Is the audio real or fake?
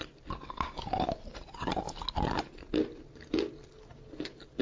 real